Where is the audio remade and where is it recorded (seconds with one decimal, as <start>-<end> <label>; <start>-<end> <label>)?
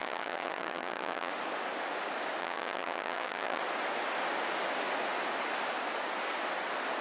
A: 0.0-1.3 remade; 1.3-2.4 recorded; 2.4-3.6 remade; 3.6-7.0 recorded